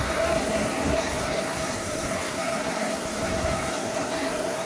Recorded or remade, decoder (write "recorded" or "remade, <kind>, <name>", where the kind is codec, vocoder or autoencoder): remade, codec, SNAC